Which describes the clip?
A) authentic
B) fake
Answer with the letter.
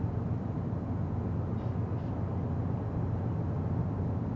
A